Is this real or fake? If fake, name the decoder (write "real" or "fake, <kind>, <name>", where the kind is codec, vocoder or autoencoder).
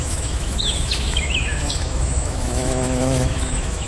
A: fake, autoencoder, DAC-VAE